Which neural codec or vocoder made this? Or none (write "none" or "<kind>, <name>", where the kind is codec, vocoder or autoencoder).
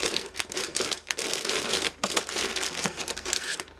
codec, SNAC